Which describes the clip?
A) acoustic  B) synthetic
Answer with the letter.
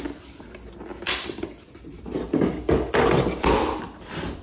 A